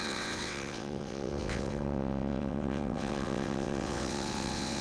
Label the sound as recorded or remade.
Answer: remade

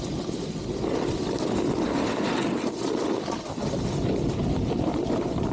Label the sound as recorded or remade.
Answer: recorded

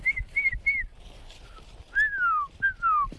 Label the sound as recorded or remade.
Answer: recorded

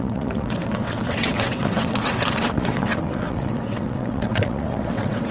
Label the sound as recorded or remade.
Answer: remade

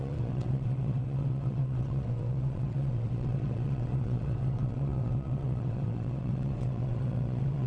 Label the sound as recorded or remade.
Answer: remade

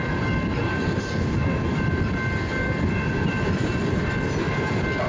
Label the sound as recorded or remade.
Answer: recorded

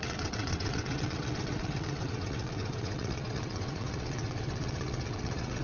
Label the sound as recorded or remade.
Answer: remade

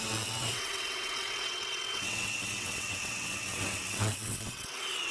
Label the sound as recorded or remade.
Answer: remade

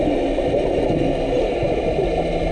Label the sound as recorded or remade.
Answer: recorded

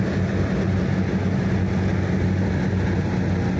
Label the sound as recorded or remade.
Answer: recorded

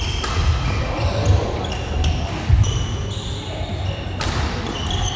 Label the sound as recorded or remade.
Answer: recorded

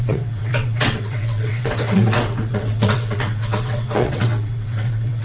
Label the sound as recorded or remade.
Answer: remade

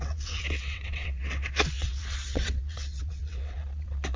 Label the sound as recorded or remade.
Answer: remade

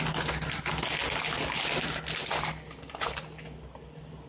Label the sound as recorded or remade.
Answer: recorded